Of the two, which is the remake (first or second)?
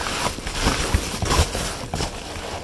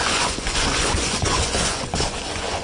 second